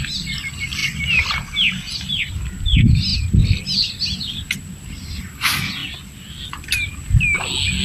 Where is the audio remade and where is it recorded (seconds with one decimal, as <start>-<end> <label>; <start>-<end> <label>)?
0.0-7.8 recorded